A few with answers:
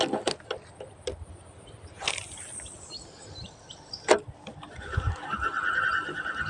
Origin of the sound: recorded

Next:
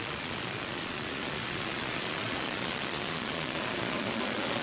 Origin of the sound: remade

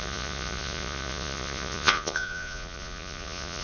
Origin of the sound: remade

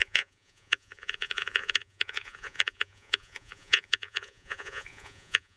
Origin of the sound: remade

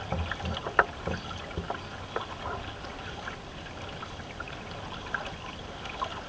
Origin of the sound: recorded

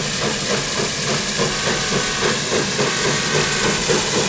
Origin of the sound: recorded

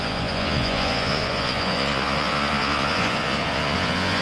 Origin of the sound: remade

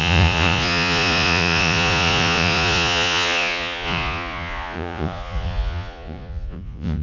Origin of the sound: remade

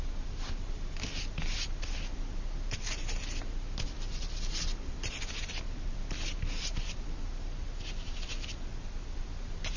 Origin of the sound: recorded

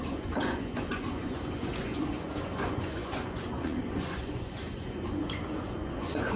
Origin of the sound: remade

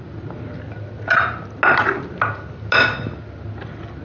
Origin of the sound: recorded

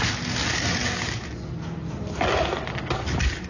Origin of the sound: recorded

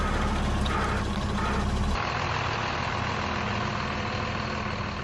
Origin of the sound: recorded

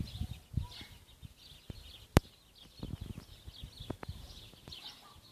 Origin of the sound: recorded